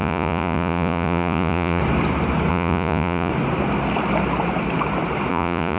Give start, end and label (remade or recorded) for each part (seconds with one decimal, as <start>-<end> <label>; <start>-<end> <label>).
0.0-1.8 remade; 1.8-2.5 recorded; 2.5-3.3 remade; 3.3-5.3 recorded; 5.3-5.8 remade